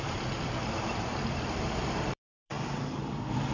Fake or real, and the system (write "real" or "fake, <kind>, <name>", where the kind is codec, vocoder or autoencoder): fake, vocoder, BigVGAN v2